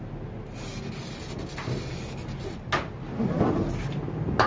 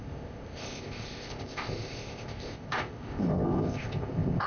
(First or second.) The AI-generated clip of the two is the second